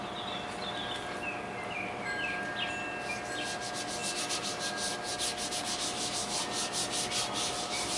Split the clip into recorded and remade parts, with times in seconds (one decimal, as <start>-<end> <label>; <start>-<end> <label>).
0.0-8.0 recorded